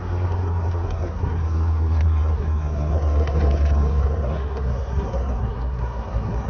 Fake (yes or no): yes